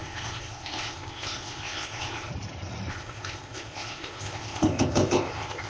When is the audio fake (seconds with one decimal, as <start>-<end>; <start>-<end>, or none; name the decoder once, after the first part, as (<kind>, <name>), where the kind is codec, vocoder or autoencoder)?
0.0-2.3 (codec, ZipCodec); 2.9-5.7